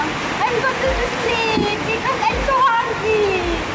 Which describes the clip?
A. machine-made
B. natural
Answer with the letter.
B